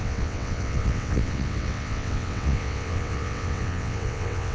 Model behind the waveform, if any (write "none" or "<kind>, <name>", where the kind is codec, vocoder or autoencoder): vocoder, WaveNeXt